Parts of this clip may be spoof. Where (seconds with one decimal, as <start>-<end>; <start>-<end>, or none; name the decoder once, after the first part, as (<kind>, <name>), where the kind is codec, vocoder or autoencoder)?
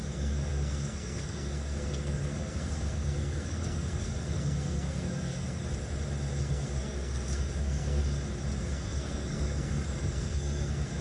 0.0-5.6 (codec, SNAC); 6.4-8.0; 8.6-11.0